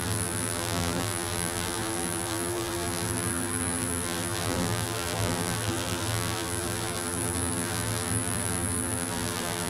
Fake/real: fake